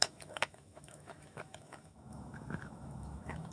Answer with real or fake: fake